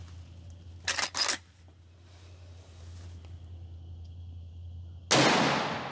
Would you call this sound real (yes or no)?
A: yes